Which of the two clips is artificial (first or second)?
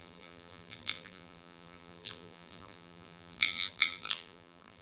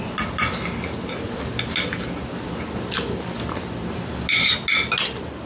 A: first